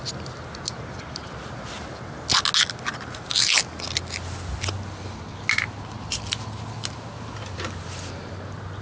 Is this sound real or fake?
real